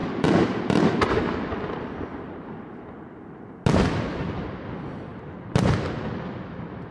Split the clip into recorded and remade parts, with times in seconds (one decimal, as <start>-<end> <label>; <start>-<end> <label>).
0.0-0.9 remade; 0.9-5.1 recorded; 5.1-5.7 remade; 5.7-6.9 recorded